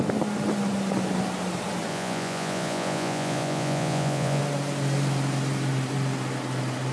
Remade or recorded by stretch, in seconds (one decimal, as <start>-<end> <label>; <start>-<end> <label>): 0.0-1.9 recorded; 1.9-4.4 remade; 4.4-6.9 recorded